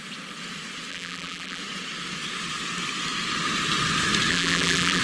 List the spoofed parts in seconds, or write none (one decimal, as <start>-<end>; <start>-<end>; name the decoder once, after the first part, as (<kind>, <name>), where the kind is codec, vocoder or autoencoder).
0.9-1.6 (vocoder, BigVGAN v2); 4.3-5.0